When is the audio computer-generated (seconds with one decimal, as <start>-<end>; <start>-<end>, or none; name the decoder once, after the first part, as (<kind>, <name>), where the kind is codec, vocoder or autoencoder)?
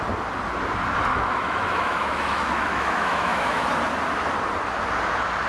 1.1-3.6 (autoencoder, DAC-VAE)